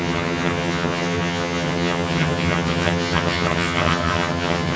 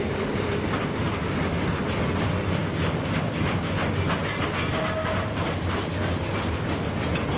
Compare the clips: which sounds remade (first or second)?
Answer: first